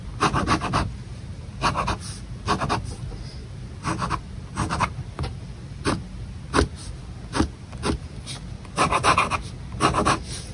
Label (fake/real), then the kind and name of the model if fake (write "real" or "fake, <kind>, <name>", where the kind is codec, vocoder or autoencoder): real